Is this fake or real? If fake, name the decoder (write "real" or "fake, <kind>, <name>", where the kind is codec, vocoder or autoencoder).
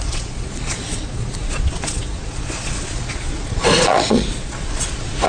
fake, vocoder, Vocos